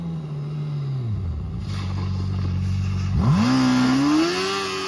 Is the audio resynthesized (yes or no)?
no